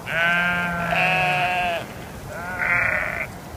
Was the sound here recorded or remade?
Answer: recorded